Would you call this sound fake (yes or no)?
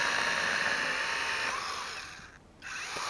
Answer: no